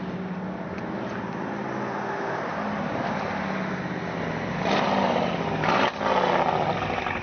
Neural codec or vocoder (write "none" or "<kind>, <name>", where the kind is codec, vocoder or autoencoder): none